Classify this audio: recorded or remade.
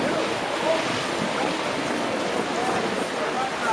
recorded